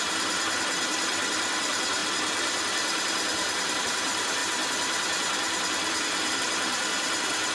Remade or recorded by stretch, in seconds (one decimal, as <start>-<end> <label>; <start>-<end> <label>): 0.0-4.4 remade; 4.4-6.3 recorded; 6.3-7.5 remade